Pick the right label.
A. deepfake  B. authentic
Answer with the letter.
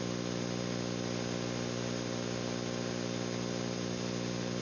B